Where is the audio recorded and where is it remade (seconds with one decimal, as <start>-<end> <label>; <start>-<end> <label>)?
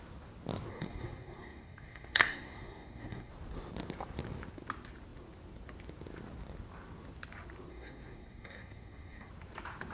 0.0-0.7 recorded; 0.7-3.3 remade; 3.3-7.7 recorded; 7.7-9.3 remade; 9.3-9.9 recorded